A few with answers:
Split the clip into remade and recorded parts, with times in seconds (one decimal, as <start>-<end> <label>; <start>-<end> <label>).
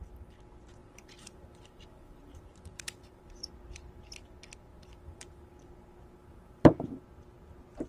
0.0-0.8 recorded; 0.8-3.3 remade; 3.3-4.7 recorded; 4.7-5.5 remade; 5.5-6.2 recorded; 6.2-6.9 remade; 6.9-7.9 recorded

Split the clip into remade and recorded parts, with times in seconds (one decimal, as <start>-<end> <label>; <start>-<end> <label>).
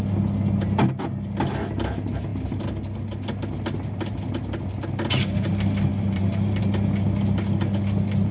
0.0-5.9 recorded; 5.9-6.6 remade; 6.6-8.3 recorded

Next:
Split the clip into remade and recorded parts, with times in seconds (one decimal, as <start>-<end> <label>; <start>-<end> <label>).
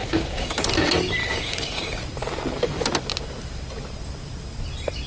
0.0-0.6 remade; 0.6-1.2 recorded; 1.2-2.0 remade; 2.0-5.1 recorded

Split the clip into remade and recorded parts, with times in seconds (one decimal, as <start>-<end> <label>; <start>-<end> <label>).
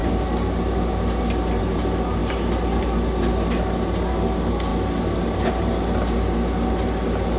0.0-7.4 recorded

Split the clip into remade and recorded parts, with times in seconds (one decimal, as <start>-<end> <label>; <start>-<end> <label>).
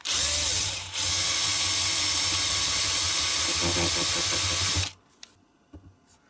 0.0-6.3 recorded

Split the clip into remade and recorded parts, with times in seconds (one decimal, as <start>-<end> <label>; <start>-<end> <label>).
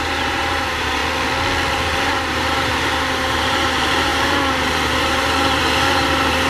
0.0-1.0 remade; 1.0-1.7 recorded; 1.7-6.5 remade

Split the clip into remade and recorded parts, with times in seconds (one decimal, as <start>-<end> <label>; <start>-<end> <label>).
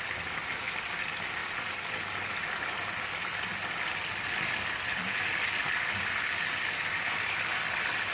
0.0-1.4 remade; 1.4-6.3 recorded; 6.3-8.1 remade